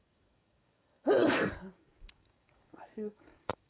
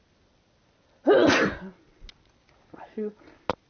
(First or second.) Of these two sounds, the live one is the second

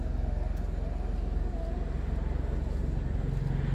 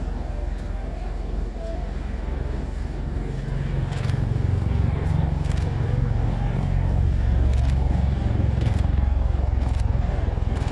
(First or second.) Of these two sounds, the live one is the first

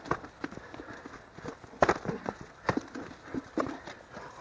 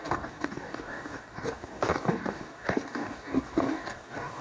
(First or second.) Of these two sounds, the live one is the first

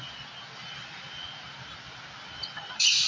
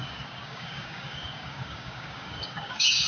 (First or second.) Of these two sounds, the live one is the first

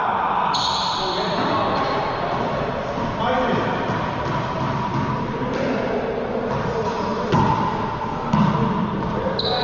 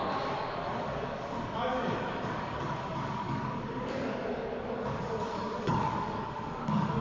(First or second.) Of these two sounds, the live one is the first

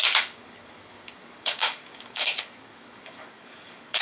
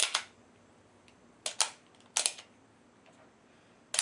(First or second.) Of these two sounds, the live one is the second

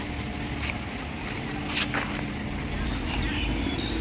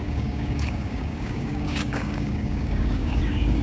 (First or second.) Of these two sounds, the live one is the first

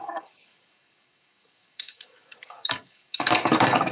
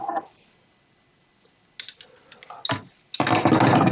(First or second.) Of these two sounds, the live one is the second